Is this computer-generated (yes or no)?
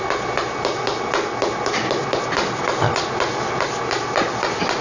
no